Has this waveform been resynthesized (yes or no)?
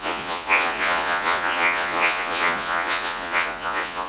yes